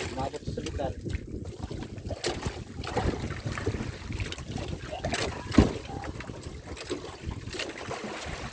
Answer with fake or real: real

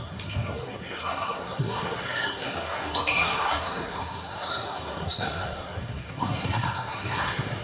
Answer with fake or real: fake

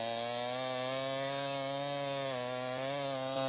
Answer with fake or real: real